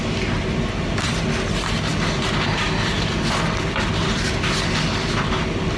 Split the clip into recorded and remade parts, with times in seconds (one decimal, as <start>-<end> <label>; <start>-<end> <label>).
0.0-5.8 recorded